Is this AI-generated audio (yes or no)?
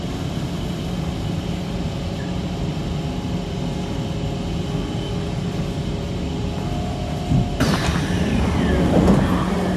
no